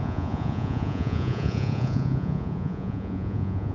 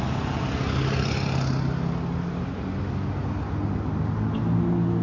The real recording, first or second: second